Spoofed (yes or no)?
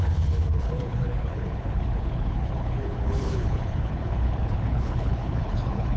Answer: yes